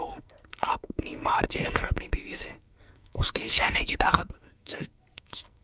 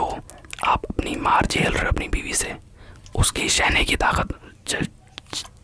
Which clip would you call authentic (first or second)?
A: second